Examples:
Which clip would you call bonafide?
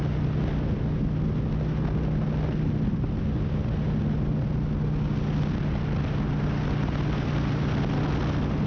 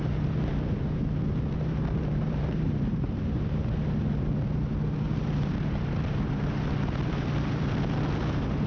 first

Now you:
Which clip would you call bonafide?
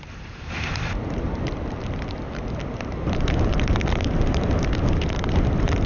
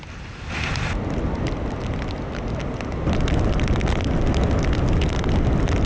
second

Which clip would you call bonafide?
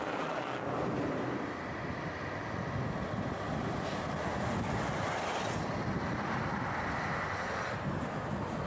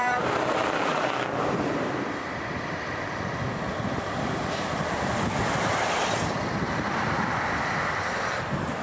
first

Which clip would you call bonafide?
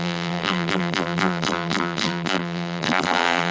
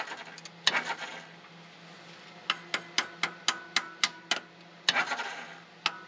second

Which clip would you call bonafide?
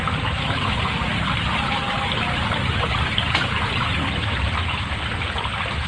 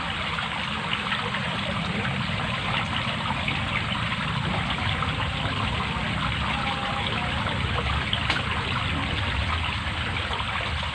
second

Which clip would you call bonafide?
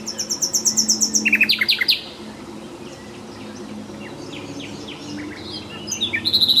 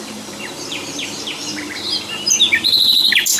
first